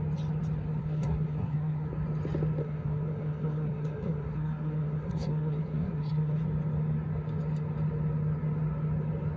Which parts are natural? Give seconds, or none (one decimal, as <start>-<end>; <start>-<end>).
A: 0.0-0.8; 1.9-2.6; 6.4-9.4